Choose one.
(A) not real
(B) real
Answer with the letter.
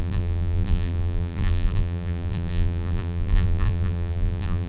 A